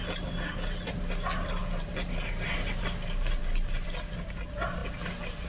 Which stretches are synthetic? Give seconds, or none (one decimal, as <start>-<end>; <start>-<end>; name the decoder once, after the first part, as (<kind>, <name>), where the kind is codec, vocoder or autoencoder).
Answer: none